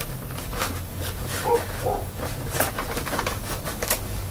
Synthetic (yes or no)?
yes